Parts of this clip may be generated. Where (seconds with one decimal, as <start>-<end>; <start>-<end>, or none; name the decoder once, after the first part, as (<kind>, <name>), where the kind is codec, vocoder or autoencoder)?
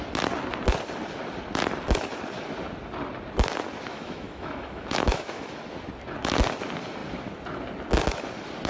3.9-5.5 (autoencoder, DAC-VAE)